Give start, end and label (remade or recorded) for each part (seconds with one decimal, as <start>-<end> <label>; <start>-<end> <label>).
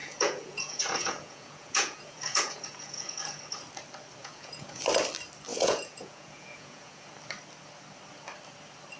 0.0-3.4 remade; 3.4-4.2 recorded; 4.2-4.8 remade; 4.8-5.5 recorded; 5.5-7.1 remade; 7.1-9.0 recorded